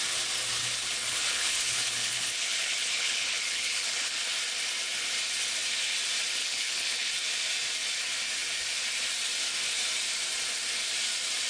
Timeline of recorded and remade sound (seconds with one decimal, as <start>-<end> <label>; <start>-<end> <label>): 0.0-0.6 recorded; 0.6-4.2 remade; 4.2-6.4 recorded; 6.4-7.1 remade; 7.1-11.5 recorded